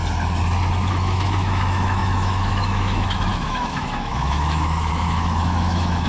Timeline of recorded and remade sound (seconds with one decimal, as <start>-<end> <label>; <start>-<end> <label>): 0.0-0.9 recorded; 0.9-6.1 remade